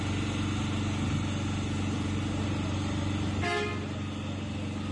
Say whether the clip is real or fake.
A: real